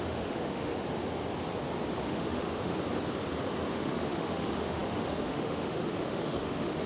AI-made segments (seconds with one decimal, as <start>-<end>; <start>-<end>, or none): 0.0-0.7; 2.0-2.7; 3.7-6.9